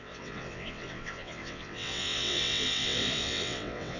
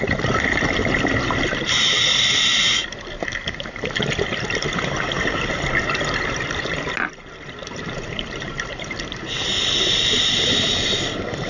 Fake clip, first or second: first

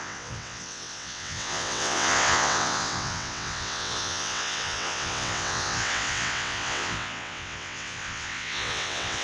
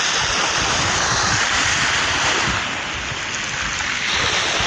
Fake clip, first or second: first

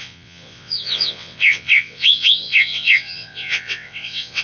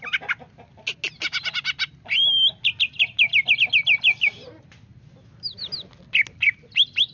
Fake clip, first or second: first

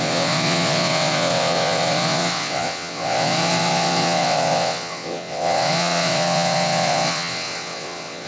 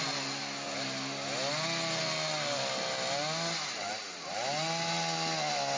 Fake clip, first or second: first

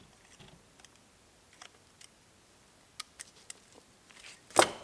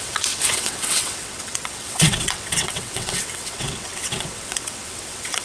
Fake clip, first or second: second